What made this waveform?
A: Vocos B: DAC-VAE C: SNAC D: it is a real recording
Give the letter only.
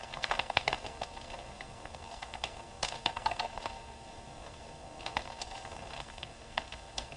C